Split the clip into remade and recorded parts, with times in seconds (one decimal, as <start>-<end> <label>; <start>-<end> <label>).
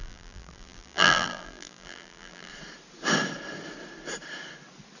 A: 0.0-2.5 remade; 2.5-5.0 recorded